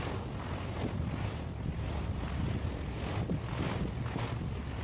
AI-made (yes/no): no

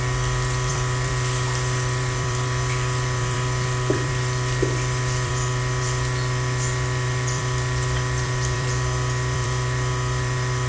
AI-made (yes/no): yes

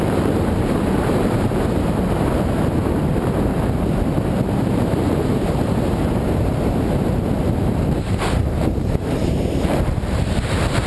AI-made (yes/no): yes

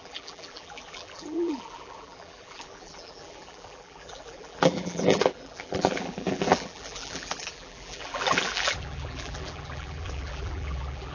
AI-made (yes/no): yes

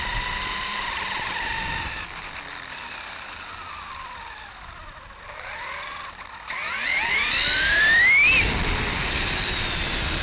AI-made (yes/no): no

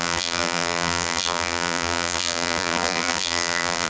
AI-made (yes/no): yes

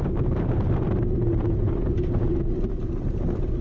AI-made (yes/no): yes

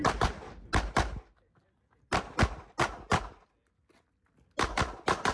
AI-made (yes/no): no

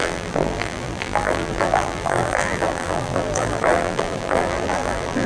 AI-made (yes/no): yes